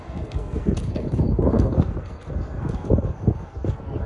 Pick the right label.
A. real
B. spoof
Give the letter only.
B